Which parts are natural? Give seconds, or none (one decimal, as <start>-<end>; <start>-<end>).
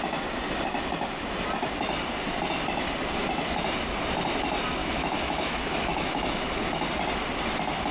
0.0-4.8; 6.5-7.9